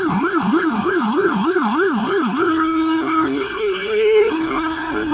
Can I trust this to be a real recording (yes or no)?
no